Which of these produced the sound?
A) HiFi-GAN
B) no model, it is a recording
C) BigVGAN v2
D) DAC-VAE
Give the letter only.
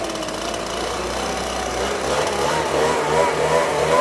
B